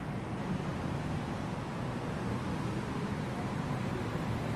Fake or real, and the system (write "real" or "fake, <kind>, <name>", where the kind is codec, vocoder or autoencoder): real